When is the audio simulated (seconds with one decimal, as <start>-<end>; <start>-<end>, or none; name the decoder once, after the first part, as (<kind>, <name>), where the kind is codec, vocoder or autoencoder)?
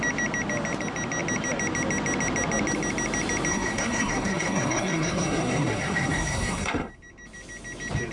3.5-6.9 (codec, SNAC)